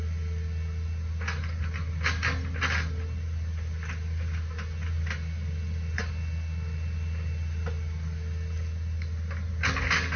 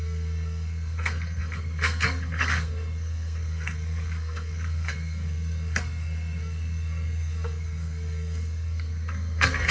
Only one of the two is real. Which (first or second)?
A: first